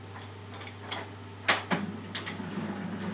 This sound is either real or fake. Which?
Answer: real